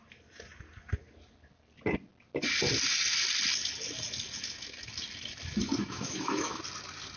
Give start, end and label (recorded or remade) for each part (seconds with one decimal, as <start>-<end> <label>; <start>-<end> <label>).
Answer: 0.0-5.8 recorded; 5.8-6.6 remade; 6.6-7.2 recorded